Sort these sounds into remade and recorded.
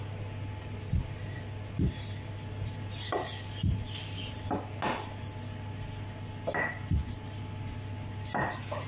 recorded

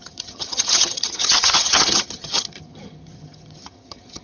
remade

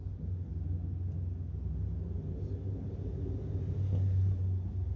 recorded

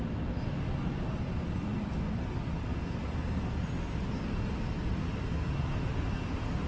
recorded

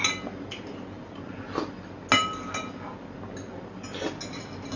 recorded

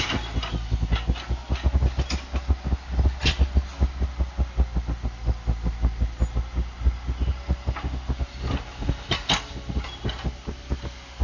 recorded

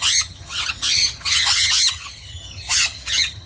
remade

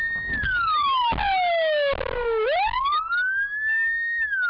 recorded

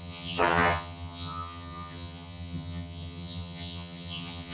remade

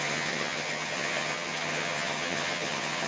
remade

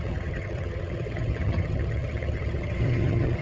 remade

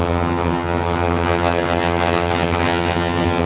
remade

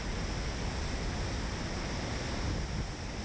recorded